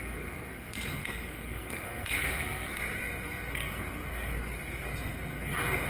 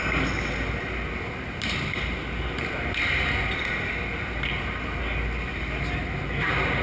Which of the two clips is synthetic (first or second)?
first